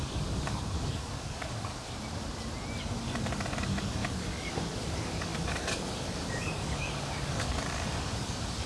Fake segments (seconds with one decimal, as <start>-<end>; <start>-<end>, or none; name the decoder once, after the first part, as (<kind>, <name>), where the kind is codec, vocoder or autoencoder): 0.0-1.7 (codec, DAC); 2.8-8.7